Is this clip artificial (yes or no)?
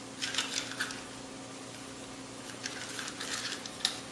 no